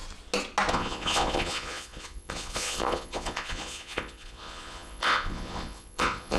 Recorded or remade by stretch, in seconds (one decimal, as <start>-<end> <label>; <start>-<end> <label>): 0.0-0.7 recorded; 0.7-6.4 remade